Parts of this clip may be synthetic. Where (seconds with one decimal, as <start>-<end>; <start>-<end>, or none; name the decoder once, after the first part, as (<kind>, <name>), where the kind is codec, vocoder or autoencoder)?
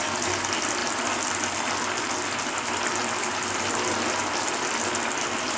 0.8-2.1 (vocoder, BigVGAN v2)